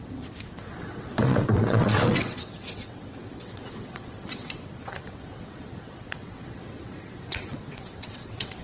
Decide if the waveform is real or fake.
fake